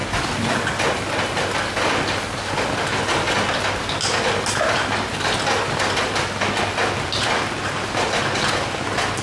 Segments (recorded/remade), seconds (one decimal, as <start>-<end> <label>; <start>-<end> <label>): 0.0-9.2 recorded